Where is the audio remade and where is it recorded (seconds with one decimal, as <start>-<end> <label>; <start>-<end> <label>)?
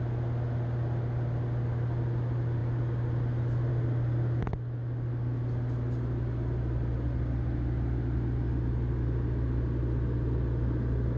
0.0-11.2 recorded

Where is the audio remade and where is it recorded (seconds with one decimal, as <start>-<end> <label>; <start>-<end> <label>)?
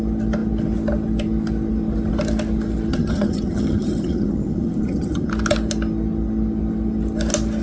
0.0-2.9 recorded; 2.9-5.3 remade; 5.3-7.6 recorded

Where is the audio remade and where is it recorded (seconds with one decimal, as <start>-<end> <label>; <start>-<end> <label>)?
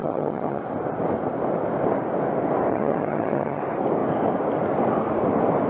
0.0-0.6 remade; 0.6-2.7 recorded; 2.7-3.6 remade; 3.6-5.7 recorded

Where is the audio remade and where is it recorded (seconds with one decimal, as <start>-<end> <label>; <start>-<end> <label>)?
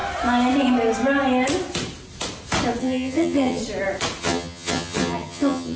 0.0-2.8 recorded; 2.8-3.6 remade; 3.6-4.2 recorded; 4.2-5.8 remade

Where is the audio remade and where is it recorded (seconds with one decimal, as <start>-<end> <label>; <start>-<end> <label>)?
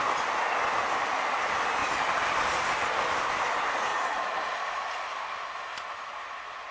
0.0-6.7 recorded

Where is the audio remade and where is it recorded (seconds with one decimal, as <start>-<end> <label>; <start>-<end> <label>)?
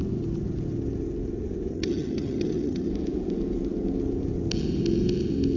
0.0-1.7 recorded; 1.7-2.9 remade; 2.9-5.6 recorded